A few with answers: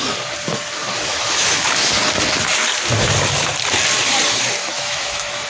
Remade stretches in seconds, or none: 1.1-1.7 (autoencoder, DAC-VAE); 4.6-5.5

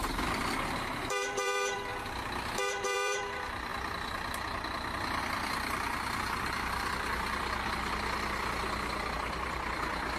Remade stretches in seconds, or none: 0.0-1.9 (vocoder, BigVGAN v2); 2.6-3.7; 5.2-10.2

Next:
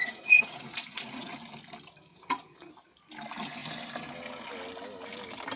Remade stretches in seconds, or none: 0.0-1.3 (vocoder, Vocos); 2.1-2.7

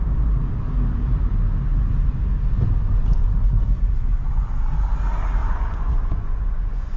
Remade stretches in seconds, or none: 5.4-7.0 (vocoder, Vocos)

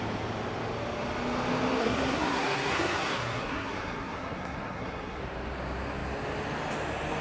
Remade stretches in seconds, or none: 1.8-5.2 (codec, SNAC)

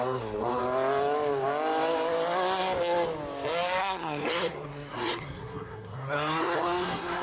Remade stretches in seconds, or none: 0.0-0.6 (codec, SNAC); 3.8-7.2

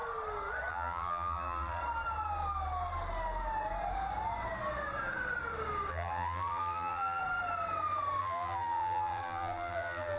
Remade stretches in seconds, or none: 0.7-1.8 (vocoder, BigVGAN v2); 5.9-7.2; 8.2-10.2